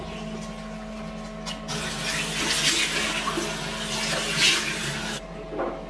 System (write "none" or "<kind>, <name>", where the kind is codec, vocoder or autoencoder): none